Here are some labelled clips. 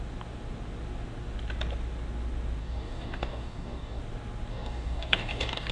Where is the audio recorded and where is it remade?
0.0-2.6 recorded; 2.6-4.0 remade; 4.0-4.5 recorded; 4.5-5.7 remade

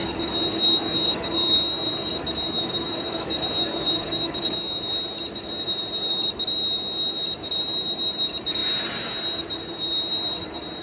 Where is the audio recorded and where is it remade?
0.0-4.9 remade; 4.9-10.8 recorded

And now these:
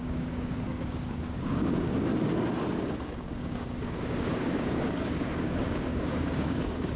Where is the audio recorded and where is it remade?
0.0-2.1 remade; 2.1-3.2 recorded; 3.2-7.0 remade

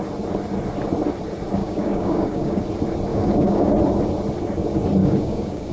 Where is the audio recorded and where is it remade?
0.0-1.6 recorded; 1.6-2.6 remade; 2.6-3.1 recorded; 3.1-3.7 remade; 3.7-5.0 recorded; 5.0-5.7 remade

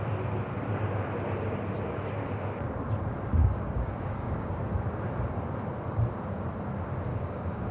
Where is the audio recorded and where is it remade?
0.0-3.4 recorded; 3.4-4.7 remade; 4.7-7.1 recorded; 7.1-7.7 remade

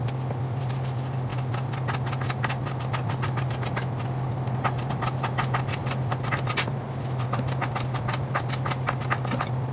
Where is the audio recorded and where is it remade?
0.0-9.7 recorded

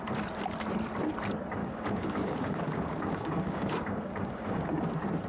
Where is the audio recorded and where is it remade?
0.0-1.6 recorded; 1.6-4.8 remade; 4.8-5.3 recorded